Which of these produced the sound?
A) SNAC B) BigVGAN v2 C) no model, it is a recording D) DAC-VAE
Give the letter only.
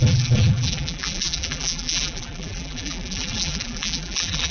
B